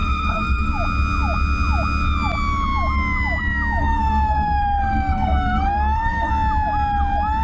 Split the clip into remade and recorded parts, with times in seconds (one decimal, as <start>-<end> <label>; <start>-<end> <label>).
0.0-0.7 remade; 0.7-3.8 recorded; 3.8-6.3 remade; 6.3-7.4 recorded